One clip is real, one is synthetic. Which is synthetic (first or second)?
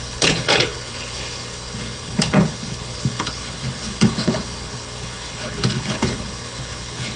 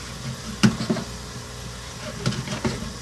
first